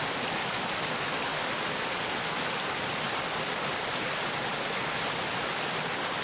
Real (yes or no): yes